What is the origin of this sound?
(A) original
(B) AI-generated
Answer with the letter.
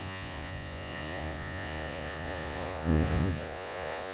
B